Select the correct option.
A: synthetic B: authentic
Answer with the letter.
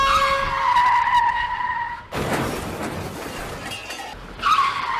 B